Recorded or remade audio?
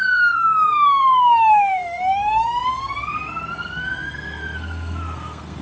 remade